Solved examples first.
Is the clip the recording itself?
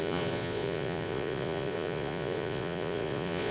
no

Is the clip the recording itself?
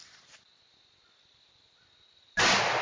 yes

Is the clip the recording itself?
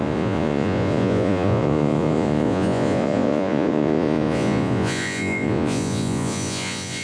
no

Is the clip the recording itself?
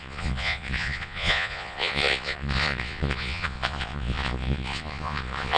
no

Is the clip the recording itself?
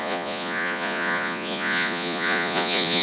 no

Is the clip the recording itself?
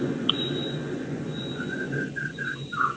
no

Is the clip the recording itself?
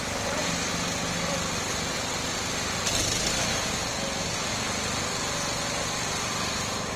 yes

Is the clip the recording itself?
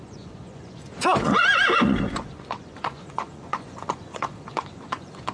no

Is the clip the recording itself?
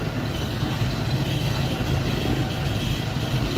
yes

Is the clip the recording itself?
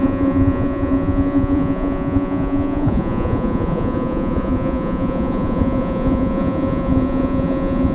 no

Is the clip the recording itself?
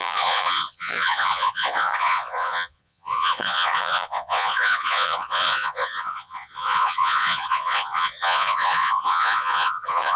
no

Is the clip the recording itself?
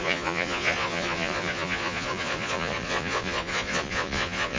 no